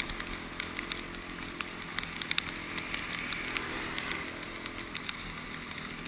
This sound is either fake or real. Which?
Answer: real